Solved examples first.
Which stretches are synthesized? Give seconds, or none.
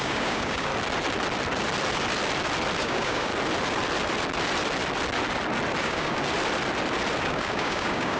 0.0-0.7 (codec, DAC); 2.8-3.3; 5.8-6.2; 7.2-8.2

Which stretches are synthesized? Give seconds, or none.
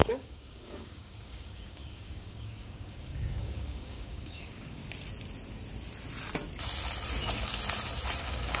0.0-4.8 (codec, DAC); 8.2-8.6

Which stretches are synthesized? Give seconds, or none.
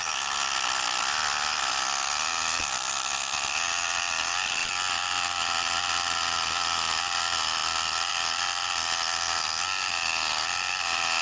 none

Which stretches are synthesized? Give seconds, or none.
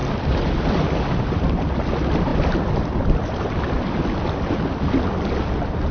none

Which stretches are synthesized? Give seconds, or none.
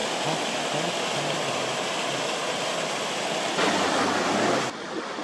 none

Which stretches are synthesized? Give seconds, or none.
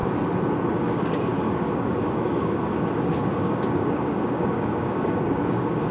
0.8-5.9 (codec, DAC)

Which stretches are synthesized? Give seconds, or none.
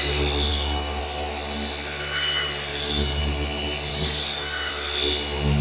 0.5-1.0 (codec, DAC); 2.7-3.2; 3.9-4.7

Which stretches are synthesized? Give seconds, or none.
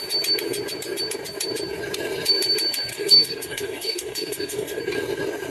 2.9-4.8 (codec, DAC)